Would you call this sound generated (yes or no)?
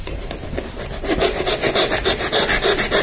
no